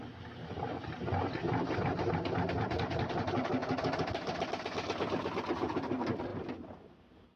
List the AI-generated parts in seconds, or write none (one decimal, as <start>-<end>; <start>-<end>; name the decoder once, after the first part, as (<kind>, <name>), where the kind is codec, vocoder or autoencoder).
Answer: none

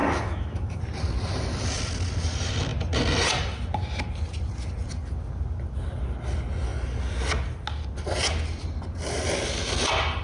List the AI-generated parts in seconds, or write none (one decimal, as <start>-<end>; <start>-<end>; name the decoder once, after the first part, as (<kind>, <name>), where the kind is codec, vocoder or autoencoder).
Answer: 0.0-0.8 (autoencoder, DAC-VAE)

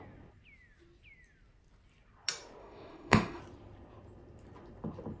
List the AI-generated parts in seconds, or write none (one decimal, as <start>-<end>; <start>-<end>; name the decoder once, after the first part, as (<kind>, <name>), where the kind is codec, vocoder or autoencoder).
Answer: 2.6-3.4 (autoencoder, DAC-VAE)

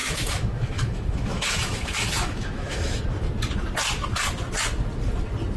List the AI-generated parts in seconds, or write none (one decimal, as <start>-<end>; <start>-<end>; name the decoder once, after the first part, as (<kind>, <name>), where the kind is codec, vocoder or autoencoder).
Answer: 0.0-3.0 (autoencoder, DAC-VAE)

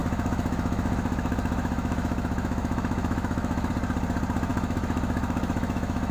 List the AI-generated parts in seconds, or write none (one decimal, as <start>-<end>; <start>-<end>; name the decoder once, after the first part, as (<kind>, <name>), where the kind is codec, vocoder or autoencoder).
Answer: 0.0-3.7 (autoencoder, DAC-VAE); 4.5-6.1

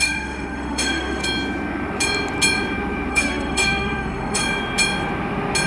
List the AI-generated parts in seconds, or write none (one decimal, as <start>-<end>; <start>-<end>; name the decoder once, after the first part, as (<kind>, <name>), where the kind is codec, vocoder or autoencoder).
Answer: 0.0-1.2 (autoencoder, DAC-VAE); 3.1-4.4

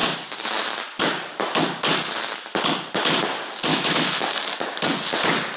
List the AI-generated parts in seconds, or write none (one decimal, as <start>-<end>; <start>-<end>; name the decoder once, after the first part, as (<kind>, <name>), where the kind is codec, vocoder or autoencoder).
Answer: 3.7-4.4 (autoencoder, DAC-VAE)